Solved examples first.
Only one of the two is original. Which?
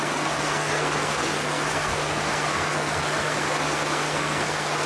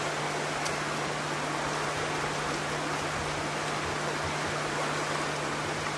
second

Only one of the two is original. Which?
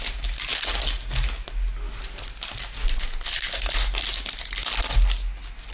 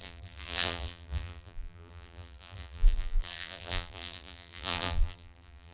first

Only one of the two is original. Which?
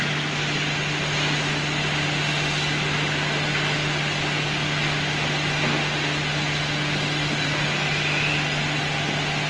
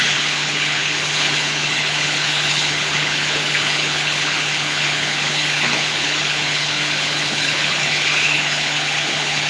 first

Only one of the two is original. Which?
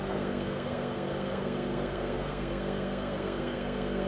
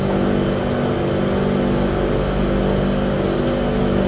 second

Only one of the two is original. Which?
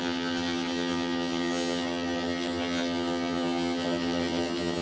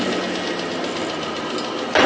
second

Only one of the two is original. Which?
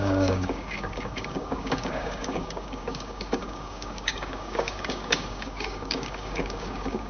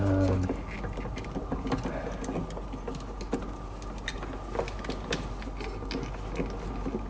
second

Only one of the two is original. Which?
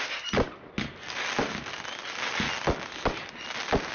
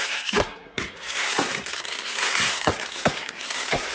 first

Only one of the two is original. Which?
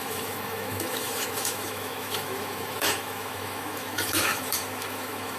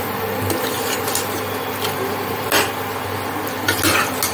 second